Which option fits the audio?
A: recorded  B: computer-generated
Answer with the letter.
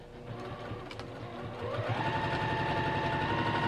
A